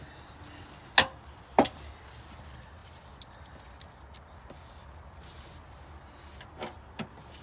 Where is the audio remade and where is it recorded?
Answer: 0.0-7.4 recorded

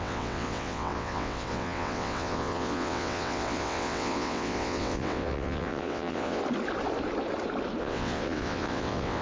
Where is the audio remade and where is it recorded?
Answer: 0.0-6.4 remade; 6.4-7.8 recorded; 7.8-9.2 remade

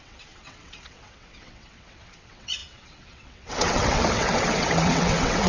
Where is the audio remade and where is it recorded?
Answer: 0.0-5.5 remade

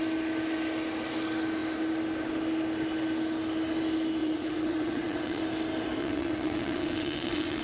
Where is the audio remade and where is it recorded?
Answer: 0.0-4.2 recorded; 4.2-5.4 remade; 5.4-6.0 recorded; 6.0-7.6 remade

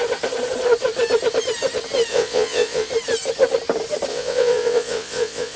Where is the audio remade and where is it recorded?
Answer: 0.0-2.1 recorded; 2.1-2.9 remade; 2.9-4.1 recorded; 4.1-5.6 remade